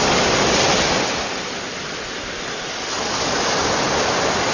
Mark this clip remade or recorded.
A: recorded